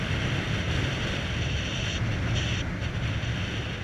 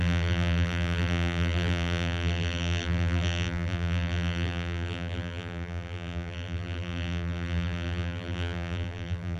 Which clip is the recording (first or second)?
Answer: first